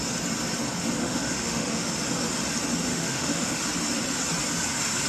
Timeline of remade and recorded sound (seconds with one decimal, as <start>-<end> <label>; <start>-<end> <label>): 0.0-1.0 recorded; 1.0-1.9 remade; 1.9-2.9 recorded; 2.9-3.6 remade; 3.6-5.1 recorded